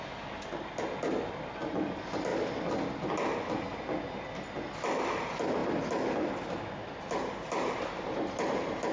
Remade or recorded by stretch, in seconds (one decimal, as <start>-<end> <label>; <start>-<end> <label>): 0.0-8.9 recorded